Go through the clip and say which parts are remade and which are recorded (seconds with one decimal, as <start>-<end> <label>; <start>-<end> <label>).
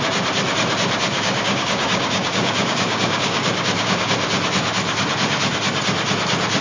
0.0-1.1 recorded; 1.1-4.1 remade; 4.1-6.6 recorded